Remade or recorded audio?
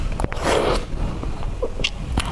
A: recorded